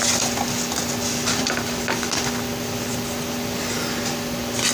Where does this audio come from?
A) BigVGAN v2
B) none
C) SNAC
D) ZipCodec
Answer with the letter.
B